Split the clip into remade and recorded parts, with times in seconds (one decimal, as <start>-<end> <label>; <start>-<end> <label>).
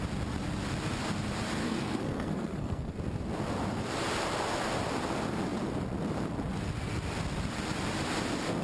0.0-1.6 recorded; 1.6-2.9 remade; 2.9-8.6 recorded